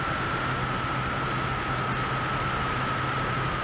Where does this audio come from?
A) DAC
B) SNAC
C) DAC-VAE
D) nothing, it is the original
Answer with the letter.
D